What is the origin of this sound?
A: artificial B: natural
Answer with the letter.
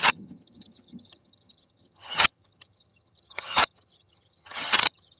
A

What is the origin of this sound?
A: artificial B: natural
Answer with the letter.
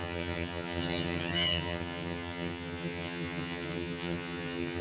A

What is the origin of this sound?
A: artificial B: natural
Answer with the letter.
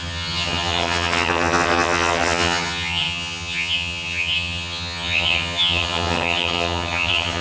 A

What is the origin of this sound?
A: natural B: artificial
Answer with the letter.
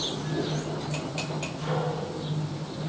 A